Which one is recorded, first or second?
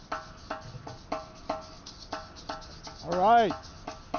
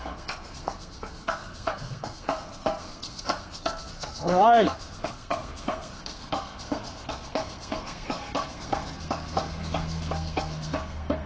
first